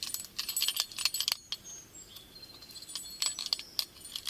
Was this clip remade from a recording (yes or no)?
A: no